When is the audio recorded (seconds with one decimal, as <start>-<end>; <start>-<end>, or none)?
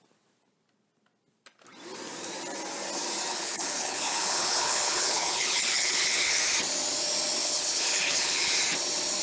0.0-3.3; 6.4-7.4; 8.5-9.2